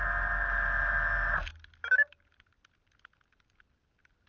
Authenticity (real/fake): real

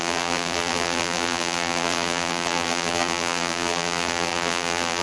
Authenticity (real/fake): fake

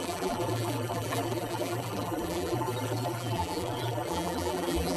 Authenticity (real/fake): fake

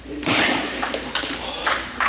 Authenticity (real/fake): fake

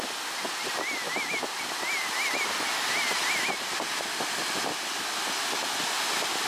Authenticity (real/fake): real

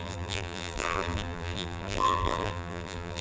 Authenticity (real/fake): fake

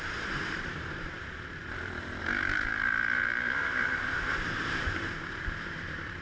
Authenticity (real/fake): fake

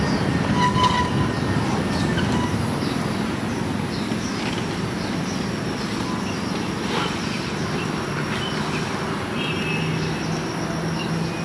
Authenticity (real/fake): real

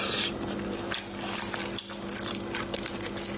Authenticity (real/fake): real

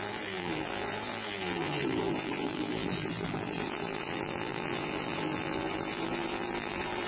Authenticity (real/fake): fake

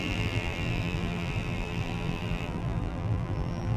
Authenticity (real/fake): fake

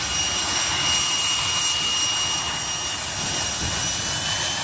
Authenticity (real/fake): real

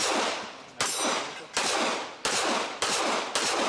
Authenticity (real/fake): real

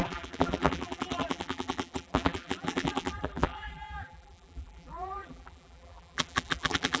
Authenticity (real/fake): fake